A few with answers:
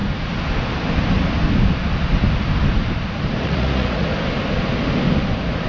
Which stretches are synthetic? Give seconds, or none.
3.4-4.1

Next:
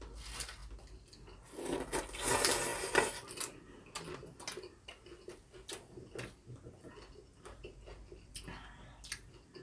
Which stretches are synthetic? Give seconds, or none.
none

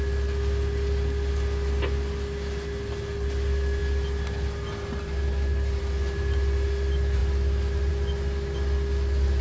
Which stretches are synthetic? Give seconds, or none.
none

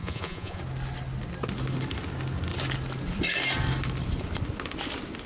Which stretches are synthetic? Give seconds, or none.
0.0-0.6

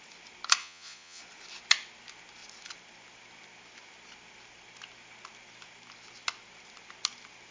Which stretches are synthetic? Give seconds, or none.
0.6-1.2

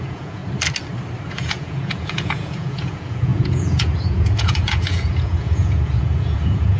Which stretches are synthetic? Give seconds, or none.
0.0-0.4; 1.3-6.8

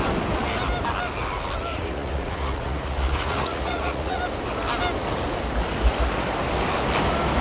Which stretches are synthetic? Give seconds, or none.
1.7-4.2